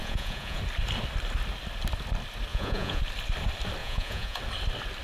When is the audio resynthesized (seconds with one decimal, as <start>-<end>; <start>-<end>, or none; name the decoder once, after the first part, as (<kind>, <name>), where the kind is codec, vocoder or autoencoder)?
0.0-0.6 (vocoder, Vocos); 2.5-3.0; 3.8-4.4